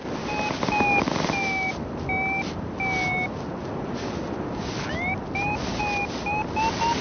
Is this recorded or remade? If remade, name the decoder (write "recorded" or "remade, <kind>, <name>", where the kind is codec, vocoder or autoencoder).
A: recorded